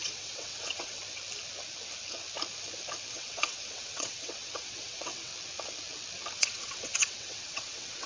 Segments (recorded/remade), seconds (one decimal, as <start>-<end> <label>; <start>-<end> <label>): 0.0-1.0 remade; 1.0-3.1 recorded; 3.1-5.3 remade; 5.3-6.4 recorded; 6.4-8.1 remade